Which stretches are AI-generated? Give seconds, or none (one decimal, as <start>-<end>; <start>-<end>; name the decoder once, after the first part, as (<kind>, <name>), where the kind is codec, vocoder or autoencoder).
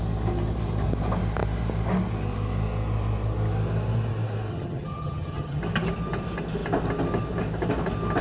4.5-5.6 (vocoder, HiFi-GAN)